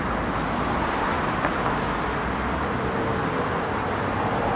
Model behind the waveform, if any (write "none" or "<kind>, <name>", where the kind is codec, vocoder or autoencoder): none